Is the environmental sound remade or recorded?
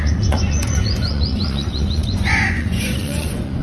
remade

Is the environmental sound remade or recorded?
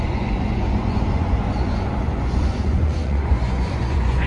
remade